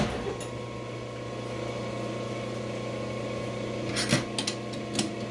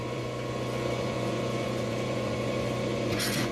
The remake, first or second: second